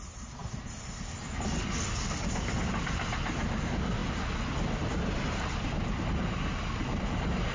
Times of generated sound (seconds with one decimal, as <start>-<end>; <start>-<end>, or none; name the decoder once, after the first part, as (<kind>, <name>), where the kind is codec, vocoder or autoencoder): none